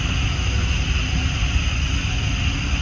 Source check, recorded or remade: recorded